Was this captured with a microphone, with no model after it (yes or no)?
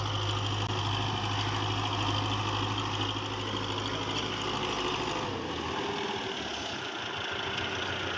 yes